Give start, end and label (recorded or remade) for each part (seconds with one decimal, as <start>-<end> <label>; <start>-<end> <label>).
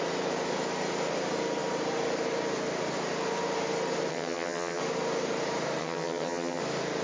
0.0-4.1 recorded; 4.1-4.8 remade; 4.8-5.8 recorded; 5.8-6.6 remade; 6.6-7.0 recorded